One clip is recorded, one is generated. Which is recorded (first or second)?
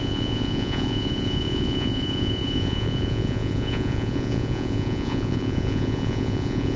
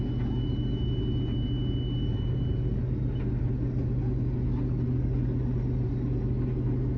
second